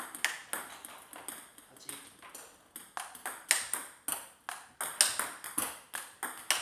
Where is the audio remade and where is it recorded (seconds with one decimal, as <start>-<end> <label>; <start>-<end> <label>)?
0.0-6.6 recorded